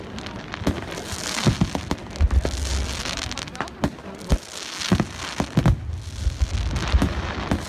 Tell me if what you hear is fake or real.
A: real